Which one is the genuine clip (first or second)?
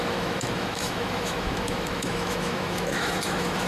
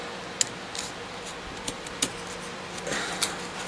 second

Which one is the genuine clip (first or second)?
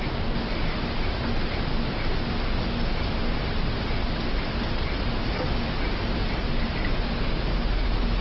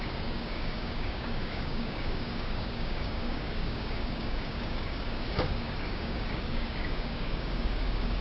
first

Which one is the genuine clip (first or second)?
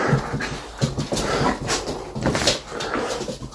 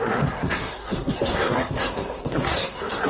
first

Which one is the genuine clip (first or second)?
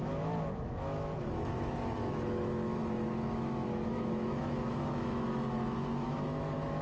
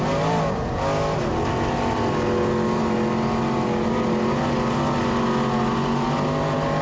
second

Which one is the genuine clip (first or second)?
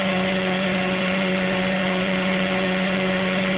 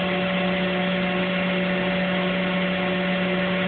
second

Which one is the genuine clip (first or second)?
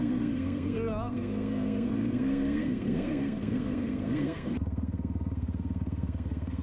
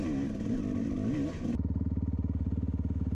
second